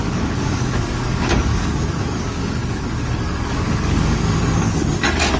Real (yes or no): no